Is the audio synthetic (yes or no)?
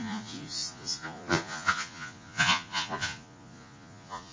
yes